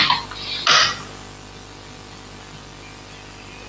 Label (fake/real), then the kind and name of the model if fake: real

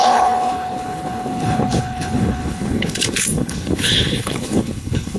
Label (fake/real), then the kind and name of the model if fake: fake, codec, HILCodec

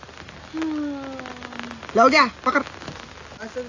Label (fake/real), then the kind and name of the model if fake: real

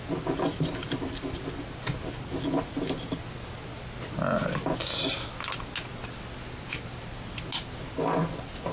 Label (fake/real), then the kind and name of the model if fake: real